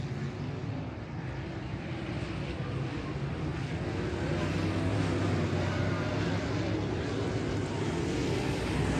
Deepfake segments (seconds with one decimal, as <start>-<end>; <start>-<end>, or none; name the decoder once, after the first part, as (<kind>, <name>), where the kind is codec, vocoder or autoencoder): 0.6-3.1 (vocoder, BigVGAN v2)